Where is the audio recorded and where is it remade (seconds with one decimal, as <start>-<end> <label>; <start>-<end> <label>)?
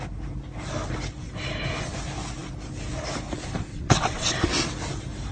0.0-3.7 recorded; 3.7-4.6 remade; 4.6-5.3 recorded